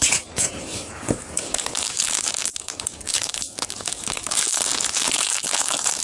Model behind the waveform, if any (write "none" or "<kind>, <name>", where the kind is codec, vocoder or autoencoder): codec, DAC